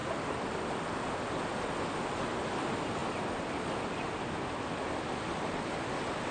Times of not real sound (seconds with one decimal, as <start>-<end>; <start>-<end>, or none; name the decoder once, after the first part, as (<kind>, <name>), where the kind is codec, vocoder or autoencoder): none